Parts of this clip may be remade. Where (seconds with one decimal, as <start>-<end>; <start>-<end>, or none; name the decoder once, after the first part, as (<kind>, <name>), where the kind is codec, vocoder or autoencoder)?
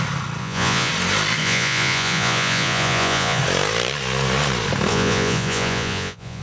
0.4-0.9 (vocoder, Vocos); 1.4-3.4; 4.9-6.4